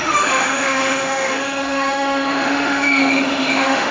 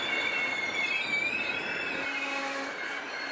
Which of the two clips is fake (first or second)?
first